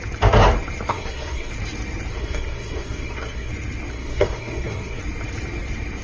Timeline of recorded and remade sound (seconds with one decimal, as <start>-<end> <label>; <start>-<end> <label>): 0.0-0.9 recorded; 0.9-1.5 remade; 1.5-2.1 recorded; 2.1-3.5 remade; 3.5-3.9 recorded; 3.9-5.0 remade; 5.0-6.0 recorded